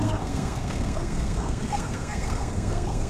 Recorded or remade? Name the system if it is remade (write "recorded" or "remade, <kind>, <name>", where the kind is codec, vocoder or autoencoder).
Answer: remade, codec, SNAC